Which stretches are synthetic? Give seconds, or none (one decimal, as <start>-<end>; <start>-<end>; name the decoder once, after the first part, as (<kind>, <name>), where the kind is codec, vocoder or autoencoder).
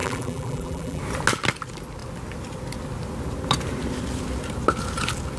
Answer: 0.0-1.0 (vocoder, BigVGAN v2)